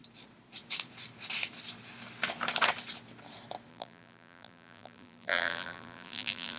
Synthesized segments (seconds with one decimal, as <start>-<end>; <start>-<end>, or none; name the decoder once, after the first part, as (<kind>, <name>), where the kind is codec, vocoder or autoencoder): 3.7-6.6 (vocoder, BigVGAN v2)